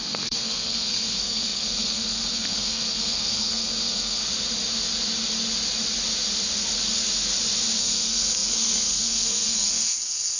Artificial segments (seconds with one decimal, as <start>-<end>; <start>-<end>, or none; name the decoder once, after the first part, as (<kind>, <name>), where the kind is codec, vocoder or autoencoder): 0.0-4.2 (codec, SNAC); 7.8-10.4

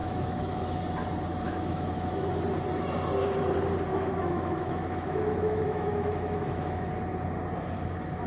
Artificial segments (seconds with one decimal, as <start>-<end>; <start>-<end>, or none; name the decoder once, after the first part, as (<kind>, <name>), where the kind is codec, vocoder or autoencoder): 0.0-0.8 (autoencoder, DAC-VAE); 1.3-2.3; 3.9-6.9